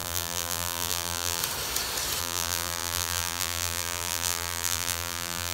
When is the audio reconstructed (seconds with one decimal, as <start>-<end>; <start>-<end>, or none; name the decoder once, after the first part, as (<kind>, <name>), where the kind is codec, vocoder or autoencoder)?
0.0-1.4 (vocoder, BigVGAN v2); 2.2-5.5